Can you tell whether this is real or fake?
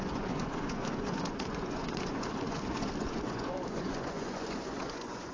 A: fake